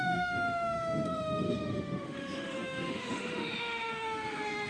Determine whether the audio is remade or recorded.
remade